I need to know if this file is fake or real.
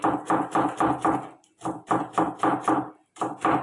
real